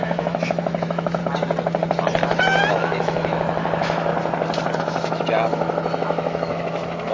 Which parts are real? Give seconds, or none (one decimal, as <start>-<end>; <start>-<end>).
1.2-2.7; 4.1-4.8